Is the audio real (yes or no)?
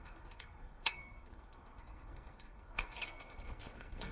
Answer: no